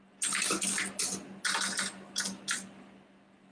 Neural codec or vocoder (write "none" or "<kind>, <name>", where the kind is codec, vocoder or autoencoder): none